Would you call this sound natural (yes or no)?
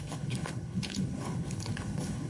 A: no